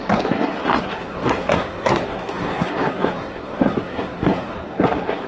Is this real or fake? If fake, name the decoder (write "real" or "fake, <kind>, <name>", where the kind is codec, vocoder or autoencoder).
fake, codec, SNAC